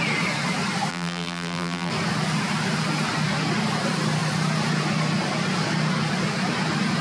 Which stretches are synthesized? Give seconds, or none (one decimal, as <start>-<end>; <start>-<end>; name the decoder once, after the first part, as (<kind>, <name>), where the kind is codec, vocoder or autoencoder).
0.9-1.9 (vocoder, BigVGAN v2)